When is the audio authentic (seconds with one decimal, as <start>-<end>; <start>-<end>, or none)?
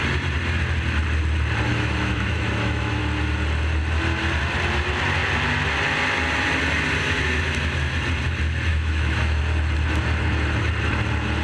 0.0-1.7; 3.0-8.7; 9.4-11.4